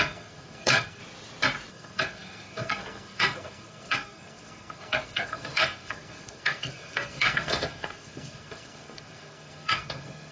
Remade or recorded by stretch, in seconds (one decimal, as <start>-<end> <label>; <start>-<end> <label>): 0.0-1.0 remade; 1.0-1.7 recorded; 1.7-10.3 remade